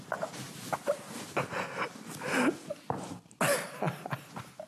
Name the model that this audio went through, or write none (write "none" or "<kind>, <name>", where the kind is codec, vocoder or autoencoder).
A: none